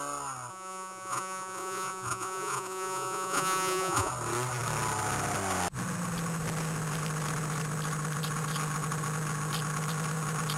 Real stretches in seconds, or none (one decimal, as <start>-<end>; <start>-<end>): 0.0-0.5; 4.1-10.6